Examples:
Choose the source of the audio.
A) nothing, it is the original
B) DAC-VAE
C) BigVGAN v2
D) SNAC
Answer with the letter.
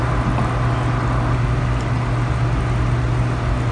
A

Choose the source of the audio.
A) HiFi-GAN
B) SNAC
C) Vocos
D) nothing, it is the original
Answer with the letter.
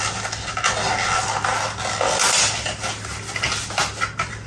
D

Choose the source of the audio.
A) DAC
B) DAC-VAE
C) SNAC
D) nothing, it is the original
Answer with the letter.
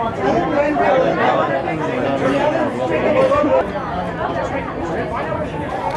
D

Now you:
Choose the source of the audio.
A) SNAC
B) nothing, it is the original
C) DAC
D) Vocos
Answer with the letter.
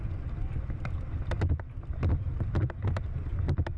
B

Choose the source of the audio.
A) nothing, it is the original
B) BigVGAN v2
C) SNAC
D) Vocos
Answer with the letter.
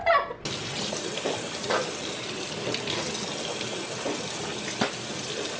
A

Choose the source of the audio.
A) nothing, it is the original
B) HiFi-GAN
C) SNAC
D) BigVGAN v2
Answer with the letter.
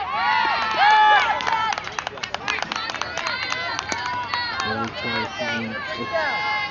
A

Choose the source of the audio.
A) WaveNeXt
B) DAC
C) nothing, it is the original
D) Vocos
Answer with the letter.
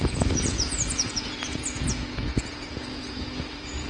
D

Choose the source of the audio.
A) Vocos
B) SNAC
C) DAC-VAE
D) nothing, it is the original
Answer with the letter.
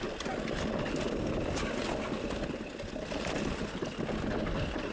D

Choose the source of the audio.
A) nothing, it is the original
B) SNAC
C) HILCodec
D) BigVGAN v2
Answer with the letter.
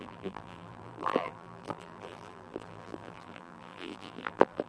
D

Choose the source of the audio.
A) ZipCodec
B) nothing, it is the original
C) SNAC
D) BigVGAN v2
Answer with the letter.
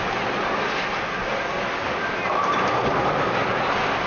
B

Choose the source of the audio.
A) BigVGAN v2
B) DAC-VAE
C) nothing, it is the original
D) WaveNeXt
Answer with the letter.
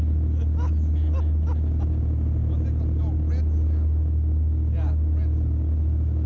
C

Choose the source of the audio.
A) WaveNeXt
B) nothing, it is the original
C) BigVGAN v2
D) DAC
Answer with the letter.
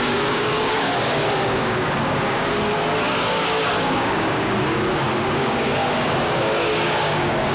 D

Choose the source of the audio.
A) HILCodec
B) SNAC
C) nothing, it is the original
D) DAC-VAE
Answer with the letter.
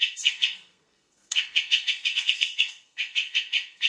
B